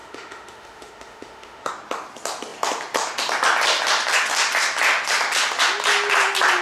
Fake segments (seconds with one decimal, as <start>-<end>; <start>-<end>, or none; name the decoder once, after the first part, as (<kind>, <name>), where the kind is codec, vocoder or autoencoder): 0.0-1.7 (autoencoder, DAC-VAE)

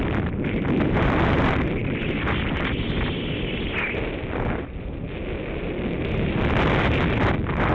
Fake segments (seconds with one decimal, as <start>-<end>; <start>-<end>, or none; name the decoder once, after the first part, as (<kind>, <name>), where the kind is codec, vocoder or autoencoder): none

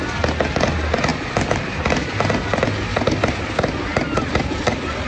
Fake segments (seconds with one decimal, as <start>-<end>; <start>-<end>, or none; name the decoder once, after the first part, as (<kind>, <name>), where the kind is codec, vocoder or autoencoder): none

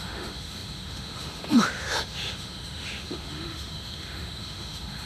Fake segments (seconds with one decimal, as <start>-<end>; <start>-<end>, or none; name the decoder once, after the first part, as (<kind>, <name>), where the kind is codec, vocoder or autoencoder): 0.0-5.1 (autoencoder, DAC-VAE)